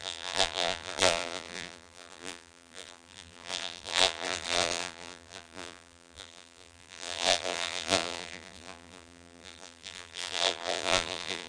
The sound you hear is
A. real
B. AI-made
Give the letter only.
B